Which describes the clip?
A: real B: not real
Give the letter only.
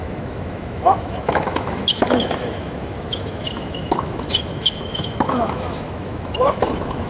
B